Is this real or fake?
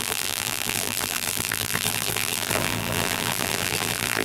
fake